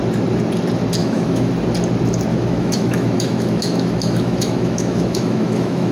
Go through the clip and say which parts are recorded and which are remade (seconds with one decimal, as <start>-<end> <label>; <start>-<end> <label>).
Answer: 0.0-1.0 recorded; 1.0-1.5 remade; 1.5-2.3 recorded; 2.3-5.9 remade